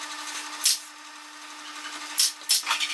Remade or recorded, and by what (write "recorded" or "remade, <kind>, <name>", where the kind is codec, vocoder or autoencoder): recorded